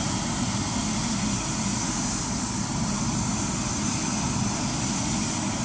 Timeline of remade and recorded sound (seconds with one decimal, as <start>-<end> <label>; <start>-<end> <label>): 0.0-5.6 recorded